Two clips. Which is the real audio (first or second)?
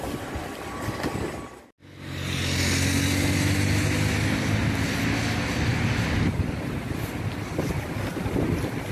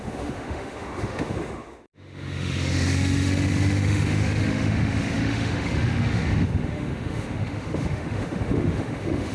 first